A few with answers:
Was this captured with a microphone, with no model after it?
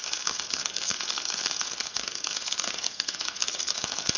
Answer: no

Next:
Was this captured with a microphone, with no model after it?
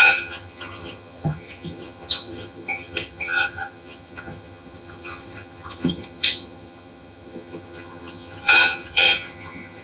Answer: no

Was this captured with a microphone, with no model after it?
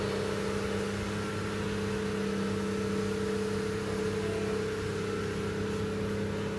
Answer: yes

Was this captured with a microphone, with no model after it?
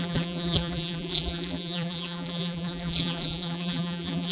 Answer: no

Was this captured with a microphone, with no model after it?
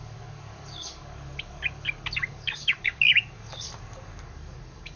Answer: no